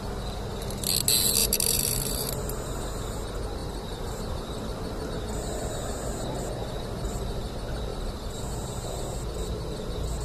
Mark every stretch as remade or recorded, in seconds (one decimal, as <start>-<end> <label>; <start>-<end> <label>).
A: 0.0-1.4 recorded; 1.4-2.3 remade; 2.3-3.6 recorded; 3.6-5.1 remade; 5.1-6.6 recorded; 6.6-7.5 remade; 7.5-7.9 recorded; 7.9-8.4 remade; 8.4-10.2 recorded